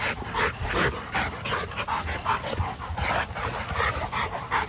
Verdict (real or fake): real